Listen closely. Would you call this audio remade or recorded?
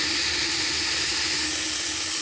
recorded